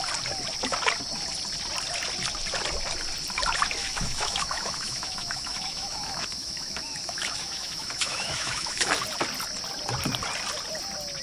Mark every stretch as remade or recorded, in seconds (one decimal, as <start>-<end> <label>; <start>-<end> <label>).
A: 0.0-3.8 recorded; 3.8-8.9 remade; 8.9-11.2 recorded